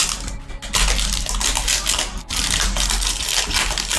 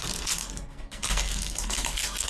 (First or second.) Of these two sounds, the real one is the first